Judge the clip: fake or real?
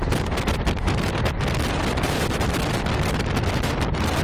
real